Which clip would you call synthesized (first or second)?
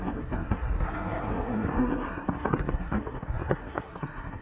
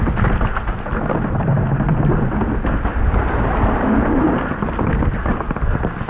first